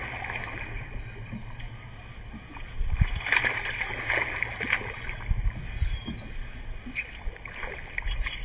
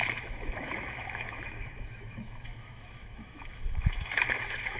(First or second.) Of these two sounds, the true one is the first